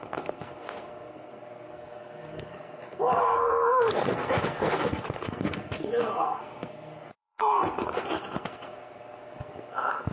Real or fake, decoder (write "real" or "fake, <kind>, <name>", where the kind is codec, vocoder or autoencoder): fake, codec, SNAC